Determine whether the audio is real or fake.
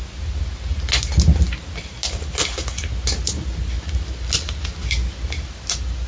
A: real